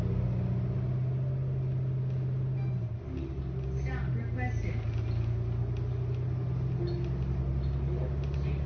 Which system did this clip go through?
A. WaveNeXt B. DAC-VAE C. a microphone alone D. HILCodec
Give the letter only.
C